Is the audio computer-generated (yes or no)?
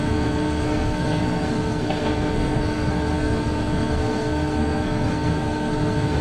yes